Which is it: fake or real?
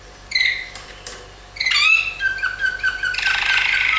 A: fake